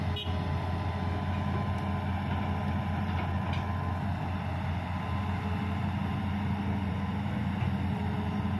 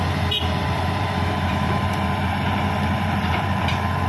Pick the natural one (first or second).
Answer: first